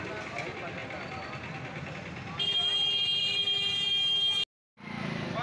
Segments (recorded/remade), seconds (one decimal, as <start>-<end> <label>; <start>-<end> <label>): 0.0-5.4 recorded